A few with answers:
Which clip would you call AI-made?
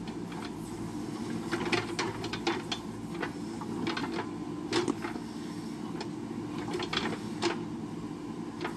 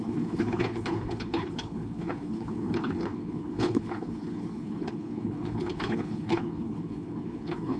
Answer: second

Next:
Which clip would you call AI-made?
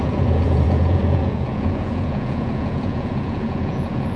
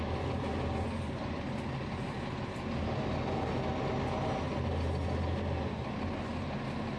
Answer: first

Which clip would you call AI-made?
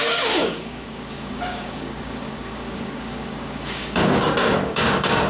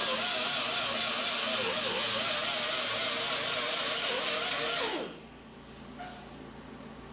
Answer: first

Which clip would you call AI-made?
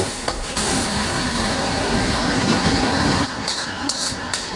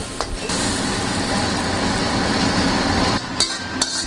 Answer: first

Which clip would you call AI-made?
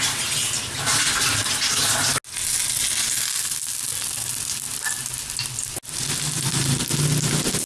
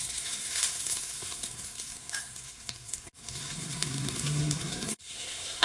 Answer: second